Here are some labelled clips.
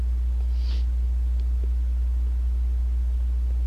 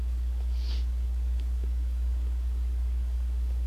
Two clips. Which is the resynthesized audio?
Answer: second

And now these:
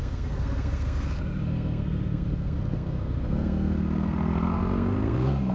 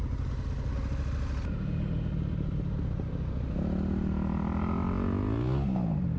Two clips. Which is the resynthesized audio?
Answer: first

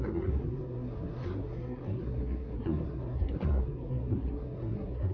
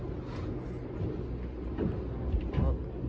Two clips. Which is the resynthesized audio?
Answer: first